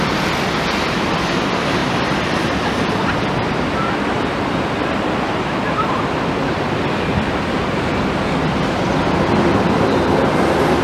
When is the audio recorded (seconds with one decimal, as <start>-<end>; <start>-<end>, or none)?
0.0-10.8